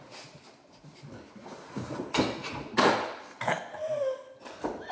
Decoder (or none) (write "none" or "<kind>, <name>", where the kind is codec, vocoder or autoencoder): none